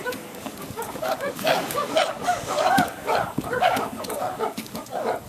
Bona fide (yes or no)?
no